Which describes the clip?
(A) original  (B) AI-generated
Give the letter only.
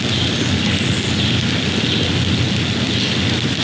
A